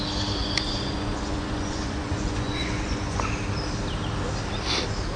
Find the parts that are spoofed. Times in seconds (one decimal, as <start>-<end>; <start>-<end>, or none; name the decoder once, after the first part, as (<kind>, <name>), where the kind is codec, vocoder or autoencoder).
0.4-3.3 (vocoder, Vocos)